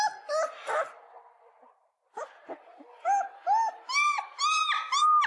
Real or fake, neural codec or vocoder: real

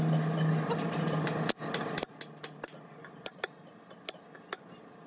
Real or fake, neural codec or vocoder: real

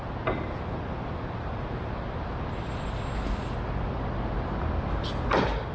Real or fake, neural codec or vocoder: real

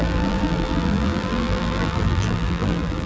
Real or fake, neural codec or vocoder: fake, vocoder, BigVGAN v2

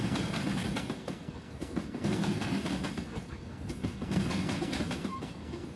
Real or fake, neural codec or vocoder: fake, codec, SNAC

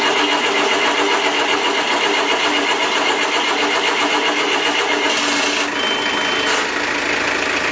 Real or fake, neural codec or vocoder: real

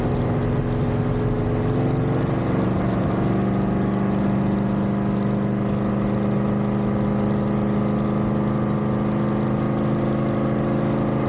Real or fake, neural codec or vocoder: real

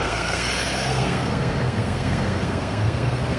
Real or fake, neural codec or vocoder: fake, codec, SNAC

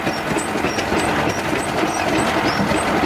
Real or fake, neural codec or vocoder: real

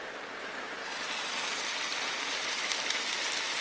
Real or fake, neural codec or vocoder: fake, vocoder, BigVGAN v2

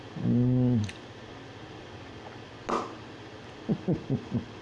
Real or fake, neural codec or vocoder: real